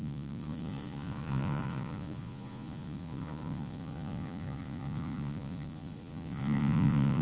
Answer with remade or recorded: remade